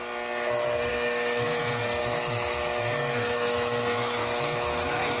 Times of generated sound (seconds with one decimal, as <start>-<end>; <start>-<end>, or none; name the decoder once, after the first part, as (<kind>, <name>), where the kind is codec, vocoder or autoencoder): 0.9-1.6 (autoencoder, DAC-VAE); 2.0-5.2